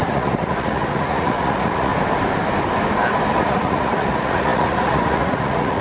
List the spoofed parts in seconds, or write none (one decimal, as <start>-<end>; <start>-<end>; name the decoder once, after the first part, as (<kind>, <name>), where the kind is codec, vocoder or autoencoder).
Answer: 0.0-1.9 (vocoder, Vocos); 3.3-5.8

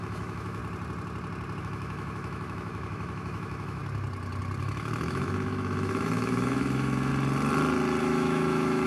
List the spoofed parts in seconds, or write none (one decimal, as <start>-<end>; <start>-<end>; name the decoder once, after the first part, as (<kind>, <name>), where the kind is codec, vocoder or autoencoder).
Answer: 0.0-0.6 (autoencoder, DAC-VAE); 1.6-3.8; 4.6-7.1; 8.0-8.9

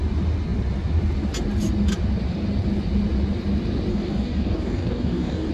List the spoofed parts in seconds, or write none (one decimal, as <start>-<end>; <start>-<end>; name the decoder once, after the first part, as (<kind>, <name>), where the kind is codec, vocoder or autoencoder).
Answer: 3.9-5.5 (codec, DAC)

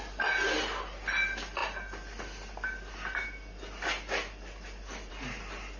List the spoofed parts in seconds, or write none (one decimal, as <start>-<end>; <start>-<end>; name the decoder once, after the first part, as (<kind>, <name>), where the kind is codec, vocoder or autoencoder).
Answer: none